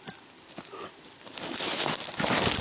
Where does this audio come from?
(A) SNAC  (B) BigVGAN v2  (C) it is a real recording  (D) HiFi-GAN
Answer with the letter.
C